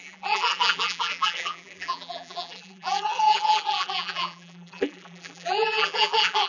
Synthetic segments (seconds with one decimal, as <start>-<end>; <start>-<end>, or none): 0.0-6.5